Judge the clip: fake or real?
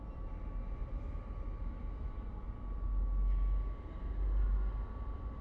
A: real